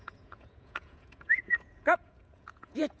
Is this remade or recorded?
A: remade